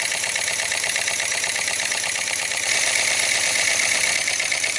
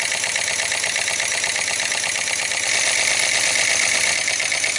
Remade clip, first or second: first